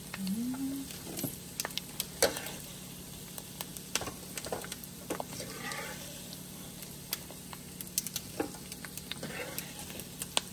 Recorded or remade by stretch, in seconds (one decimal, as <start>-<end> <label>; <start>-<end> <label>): 0.0-10.5 recorded